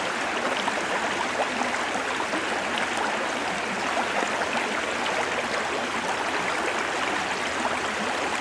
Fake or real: real